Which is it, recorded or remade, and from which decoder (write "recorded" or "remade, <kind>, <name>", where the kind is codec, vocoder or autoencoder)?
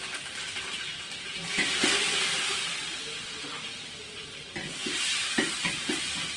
recorded